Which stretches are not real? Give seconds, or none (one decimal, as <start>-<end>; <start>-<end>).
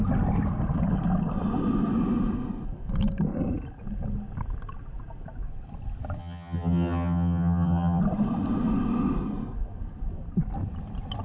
6.2-8.0